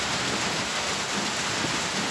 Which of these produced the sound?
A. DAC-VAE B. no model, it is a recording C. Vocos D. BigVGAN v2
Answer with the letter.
B